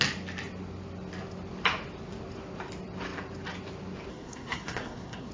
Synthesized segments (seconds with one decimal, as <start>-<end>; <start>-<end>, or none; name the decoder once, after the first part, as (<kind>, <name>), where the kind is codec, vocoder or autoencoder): 4.1-5.3 (codec, SNAC)